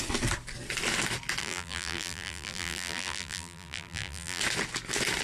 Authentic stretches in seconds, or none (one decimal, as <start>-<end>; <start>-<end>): 0.0-1.4; 4.4-5.2